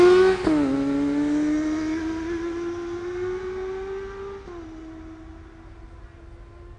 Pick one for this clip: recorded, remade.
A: recorded